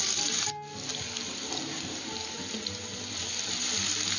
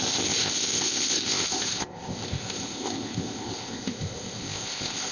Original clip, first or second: first